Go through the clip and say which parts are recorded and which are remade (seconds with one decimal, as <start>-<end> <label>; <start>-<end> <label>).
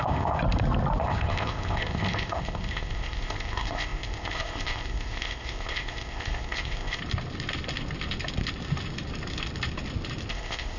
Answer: 0.0-0.4 remade; 0.4-1.0 recorded; 1.0-7.0 remade; 7.0-10.3 recorded; 10.3-10.8 remade